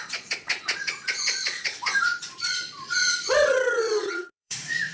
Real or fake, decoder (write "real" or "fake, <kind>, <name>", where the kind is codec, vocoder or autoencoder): fake, vocoder, Vocos